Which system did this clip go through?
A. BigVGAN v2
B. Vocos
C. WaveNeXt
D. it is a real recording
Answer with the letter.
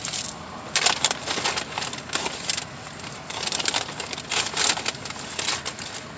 D